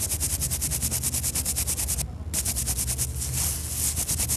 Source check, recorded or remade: recorded